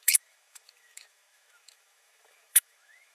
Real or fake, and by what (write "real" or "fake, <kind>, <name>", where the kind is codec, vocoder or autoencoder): fake, autoencoder, DAC-VAE